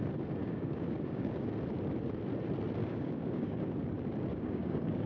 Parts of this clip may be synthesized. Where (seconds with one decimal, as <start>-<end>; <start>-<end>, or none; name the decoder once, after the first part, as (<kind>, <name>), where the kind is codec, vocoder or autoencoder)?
0.4-1.5 (codec, DAC); 2.8-3.6; 4.3-5.1